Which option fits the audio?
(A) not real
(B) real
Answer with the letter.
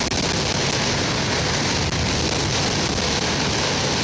B